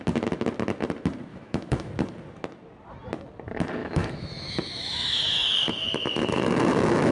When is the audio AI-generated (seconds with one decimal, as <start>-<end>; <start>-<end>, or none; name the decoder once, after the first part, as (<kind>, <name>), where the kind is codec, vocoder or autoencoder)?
1.3-1.9 (autoencoder, DAC-VAE); 3.8-7.1